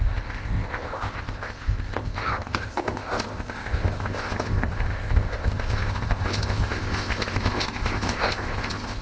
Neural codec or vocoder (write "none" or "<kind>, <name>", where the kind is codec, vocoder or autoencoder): codec, ZipCodec